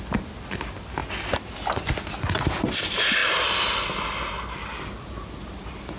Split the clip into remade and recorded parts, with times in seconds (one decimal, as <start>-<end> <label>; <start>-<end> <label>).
0.0-6.0 recorded